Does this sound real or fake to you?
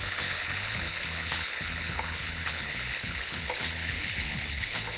fake